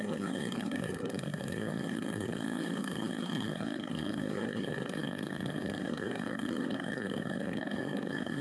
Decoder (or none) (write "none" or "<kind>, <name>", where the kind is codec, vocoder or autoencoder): codec, SNAC